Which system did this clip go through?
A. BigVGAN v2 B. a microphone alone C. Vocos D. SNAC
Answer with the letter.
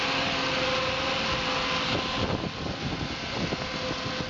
B